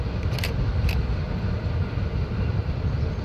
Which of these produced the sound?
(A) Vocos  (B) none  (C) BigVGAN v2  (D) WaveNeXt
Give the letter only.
C